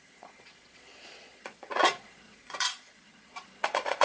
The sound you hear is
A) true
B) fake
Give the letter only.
B